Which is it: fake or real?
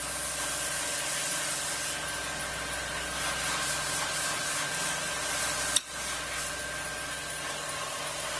real